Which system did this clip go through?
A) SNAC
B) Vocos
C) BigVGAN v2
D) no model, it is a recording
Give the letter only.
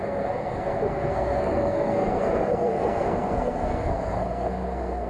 A